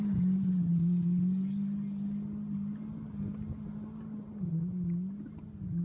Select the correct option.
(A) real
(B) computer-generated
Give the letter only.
A